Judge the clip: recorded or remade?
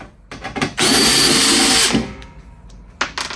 recorded